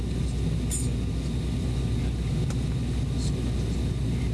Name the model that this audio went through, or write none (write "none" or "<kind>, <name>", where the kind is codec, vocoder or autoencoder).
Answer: none